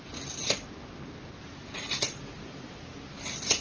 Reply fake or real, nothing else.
real